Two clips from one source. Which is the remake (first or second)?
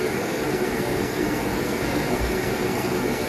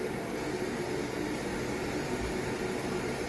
first